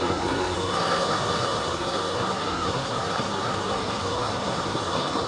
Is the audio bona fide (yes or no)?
no